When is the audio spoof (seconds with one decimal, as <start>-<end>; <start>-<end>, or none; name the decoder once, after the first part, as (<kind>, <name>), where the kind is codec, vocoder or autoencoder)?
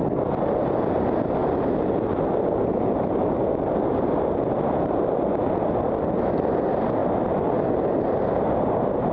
none